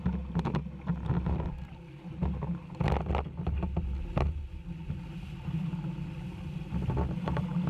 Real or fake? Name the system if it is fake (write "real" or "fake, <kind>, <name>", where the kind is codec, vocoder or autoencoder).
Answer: real